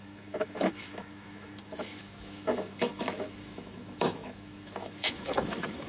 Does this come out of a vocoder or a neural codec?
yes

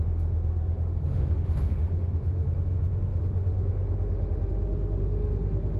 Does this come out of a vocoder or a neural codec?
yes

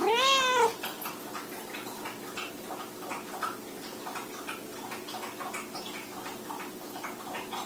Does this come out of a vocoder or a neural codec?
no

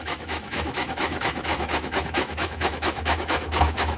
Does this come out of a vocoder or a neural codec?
yes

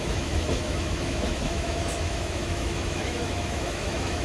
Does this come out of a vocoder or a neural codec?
yes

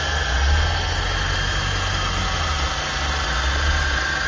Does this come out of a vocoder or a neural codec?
no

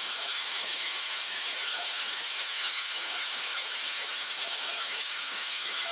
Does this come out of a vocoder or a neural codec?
yes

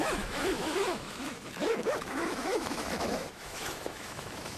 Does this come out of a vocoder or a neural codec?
yes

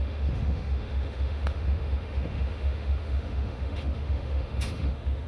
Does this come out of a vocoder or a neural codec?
yes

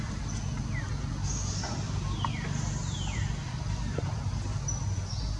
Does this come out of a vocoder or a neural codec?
no